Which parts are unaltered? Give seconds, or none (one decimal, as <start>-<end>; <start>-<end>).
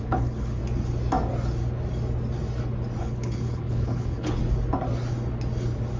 0.6-3.0; 4.4-6.0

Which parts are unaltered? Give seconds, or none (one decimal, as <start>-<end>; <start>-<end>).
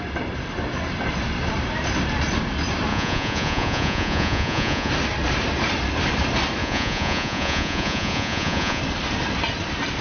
0.0-2.9; 4.9-6.6; 8.8-10.0